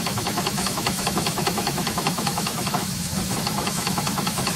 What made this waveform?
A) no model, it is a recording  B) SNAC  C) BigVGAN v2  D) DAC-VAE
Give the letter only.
D